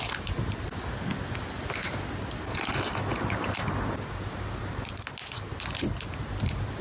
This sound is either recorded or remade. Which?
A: recorded